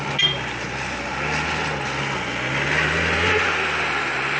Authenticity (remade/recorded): recorded